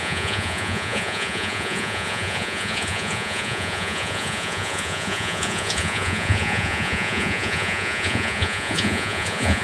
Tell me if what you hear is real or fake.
fake